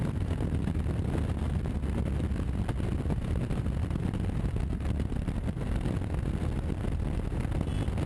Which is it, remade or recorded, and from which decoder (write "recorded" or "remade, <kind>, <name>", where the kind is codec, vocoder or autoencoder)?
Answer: recorded